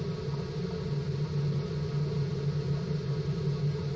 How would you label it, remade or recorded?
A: recorded